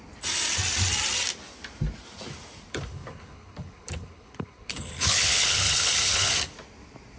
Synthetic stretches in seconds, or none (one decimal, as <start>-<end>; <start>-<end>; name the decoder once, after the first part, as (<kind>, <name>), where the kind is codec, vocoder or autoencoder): 2.7-6.3 (codec, HILCodec)